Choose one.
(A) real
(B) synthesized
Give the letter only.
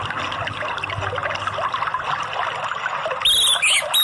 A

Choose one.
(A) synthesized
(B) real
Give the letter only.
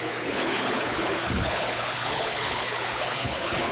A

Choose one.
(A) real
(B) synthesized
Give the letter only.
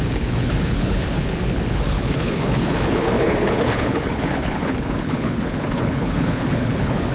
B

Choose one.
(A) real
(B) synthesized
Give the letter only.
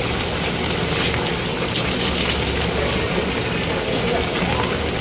A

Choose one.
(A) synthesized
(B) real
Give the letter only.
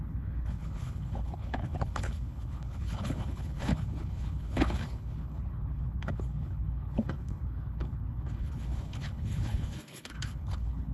A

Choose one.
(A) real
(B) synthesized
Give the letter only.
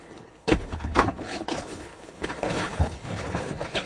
B